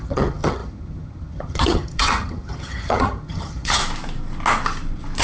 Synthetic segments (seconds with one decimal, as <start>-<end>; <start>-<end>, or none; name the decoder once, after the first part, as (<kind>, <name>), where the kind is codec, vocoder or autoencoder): 0.0-3.8 (vocoder, HiFi-GAN)